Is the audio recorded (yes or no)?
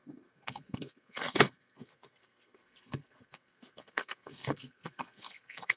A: no